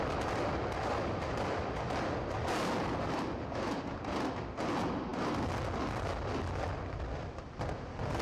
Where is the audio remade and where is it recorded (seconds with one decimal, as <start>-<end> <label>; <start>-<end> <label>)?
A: 0.0-8.2 recorded